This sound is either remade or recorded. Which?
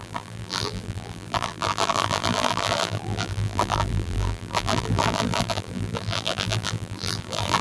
remade